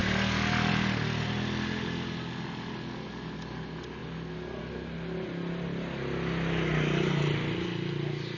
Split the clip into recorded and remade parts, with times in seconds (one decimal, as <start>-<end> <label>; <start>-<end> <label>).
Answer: 0.0-8.4 recorded